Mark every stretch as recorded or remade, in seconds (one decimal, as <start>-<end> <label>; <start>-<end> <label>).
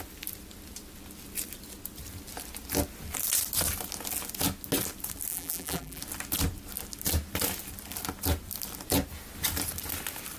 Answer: 0.0-5.3 recorded; 5.3-6.0 remade; 6.0-10.4 recorded